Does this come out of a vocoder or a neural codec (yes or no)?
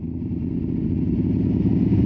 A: no